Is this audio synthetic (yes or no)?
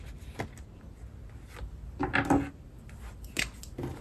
no